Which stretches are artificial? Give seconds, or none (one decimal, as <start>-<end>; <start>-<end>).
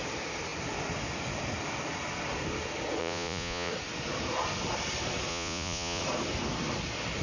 3.0-3.7; 5.3-6.0